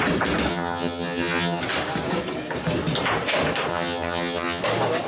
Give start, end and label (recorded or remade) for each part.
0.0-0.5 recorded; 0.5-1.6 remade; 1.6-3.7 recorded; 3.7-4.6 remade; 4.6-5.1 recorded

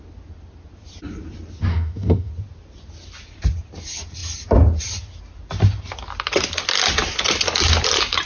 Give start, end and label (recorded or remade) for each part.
0.0-1.7 recorded; 1.7-2.3 remade; 2.3-8.3 recorded

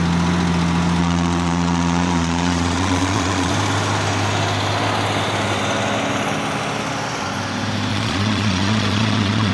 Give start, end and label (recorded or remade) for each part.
0.0-1.0 recorded; 1.0-3.5 remade; 3.5-7.9 recorded; 7.9-9.5 remade

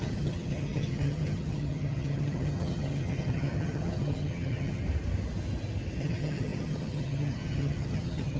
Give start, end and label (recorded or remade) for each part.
0.0-4.8 remade; 4.8-6.0 recorded; 6.0-8.4 remade